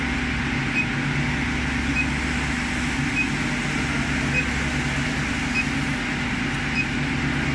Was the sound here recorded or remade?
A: recorded